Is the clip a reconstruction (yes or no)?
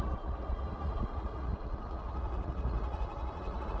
yes